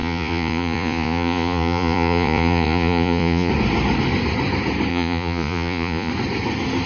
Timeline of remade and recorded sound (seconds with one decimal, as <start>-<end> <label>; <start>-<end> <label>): 0.0-3.5 remade; 3.5-4.9 recorded; 4.9-6.1 remade; 6.1-6.9 recorded